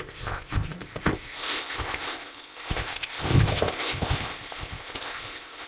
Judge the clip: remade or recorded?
remade